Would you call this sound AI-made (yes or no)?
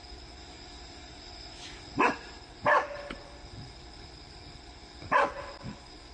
yes